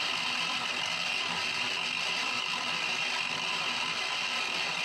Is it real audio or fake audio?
real